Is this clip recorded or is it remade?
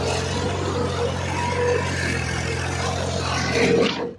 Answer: recorded